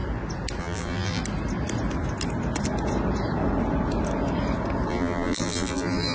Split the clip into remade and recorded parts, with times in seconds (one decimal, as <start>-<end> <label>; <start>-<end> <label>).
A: 0.0-0.6 recorded; 0.6-1.2 remade; 1.2-4.9 recorded; 4.9-6.1 remade

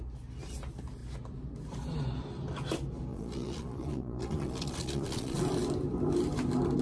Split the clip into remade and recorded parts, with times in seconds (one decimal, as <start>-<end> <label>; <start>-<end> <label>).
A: 0.0-3.1 recorded; 3.1-5.4 remade; 5.4-6.8 recorded

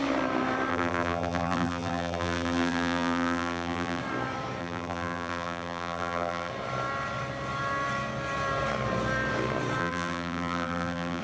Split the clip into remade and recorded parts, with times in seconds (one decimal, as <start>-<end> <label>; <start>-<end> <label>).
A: 0.0-0.7 recorded; 0.7-4.0 remade; 4.0-4.6 recorded; 4.6-6.5 remade; 6.5-9.8 recorded; 9.8-11.2 remade

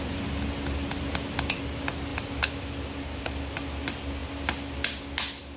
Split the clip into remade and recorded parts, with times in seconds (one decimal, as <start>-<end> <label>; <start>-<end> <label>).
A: 0.0-5.6 recorded

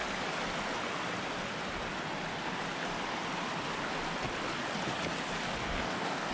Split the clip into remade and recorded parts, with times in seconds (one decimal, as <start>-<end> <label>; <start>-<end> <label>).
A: 0.0-5.6 recorded; 5.6-6.3 remade